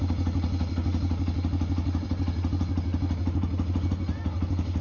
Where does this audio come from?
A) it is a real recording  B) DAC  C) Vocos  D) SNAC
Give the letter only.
A